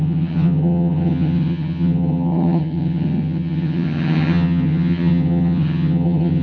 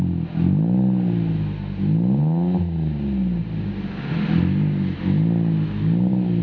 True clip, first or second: second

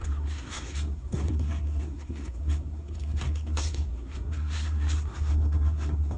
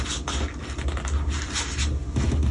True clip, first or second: second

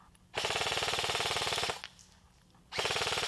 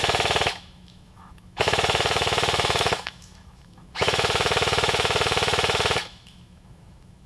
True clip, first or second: first